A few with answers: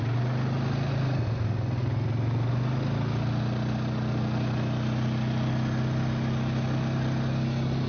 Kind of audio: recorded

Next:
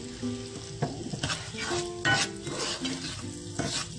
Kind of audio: recorded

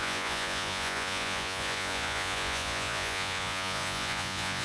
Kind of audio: remade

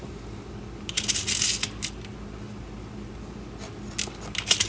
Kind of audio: recorded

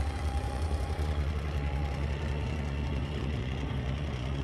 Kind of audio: remade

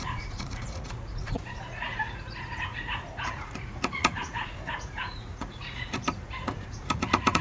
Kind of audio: remade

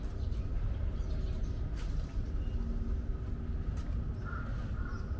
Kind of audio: recorded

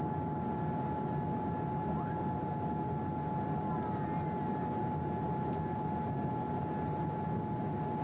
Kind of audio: recorded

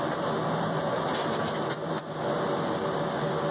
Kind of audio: recorded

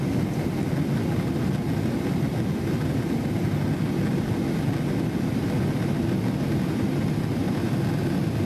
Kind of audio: recorded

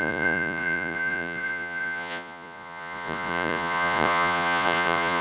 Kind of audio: remade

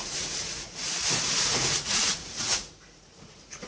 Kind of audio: remade